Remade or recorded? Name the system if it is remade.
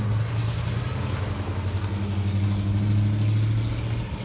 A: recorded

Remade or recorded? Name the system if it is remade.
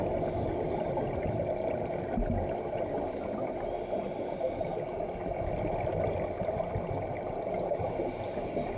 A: recorded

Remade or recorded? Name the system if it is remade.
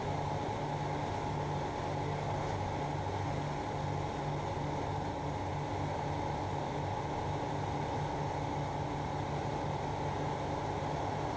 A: recorded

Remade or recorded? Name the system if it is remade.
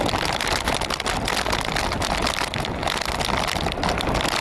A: recorded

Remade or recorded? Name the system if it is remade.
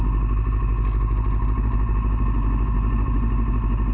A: recorded